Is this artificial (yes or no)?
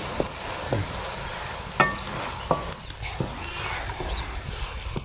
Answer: no